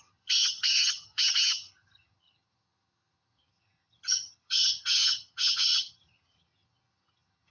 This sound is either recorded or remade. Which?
remade